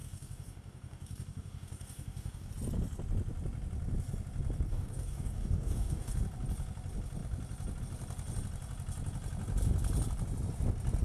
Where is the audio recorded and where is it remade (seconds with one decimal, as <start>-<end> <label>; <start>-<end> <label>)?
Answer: 0.0-2.5 remade; 2.5-4.7 recorded; 4.7-6.2 remade; 6.2-11.0 recorded